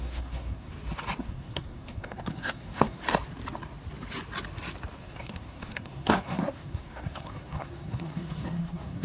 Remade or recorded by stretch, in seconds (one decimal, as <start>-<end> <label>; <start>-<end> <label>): 0.0-0.7 remade; 0.7-1.2 recorded; 1.2-3.0 remade; 3.0-5.0 recorded; 5.0-9.0 remade